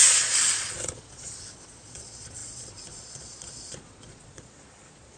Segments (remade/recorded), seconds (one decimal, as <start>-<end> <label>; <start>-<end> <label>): 0.0-5.2 remade